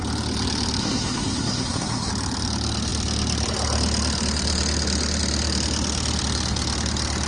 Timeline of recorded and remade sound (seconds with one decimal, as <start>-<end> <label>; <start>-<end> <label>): 0.0-0.8 recorded; 0.8-2.1 remade; 2.1-7.3 recorded